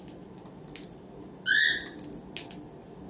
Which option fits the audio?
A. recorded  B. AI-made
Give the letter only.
A